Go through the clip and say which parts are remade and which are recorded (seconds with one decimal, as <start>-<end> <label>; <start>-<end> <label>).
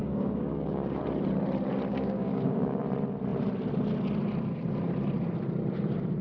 0.0-1.0 remade; 1.0-1.9 recorded; 1.9-2.8 remade; 2.8-6.2 recorded